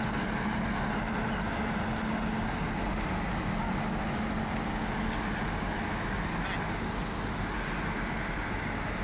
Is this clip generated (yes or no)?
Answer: no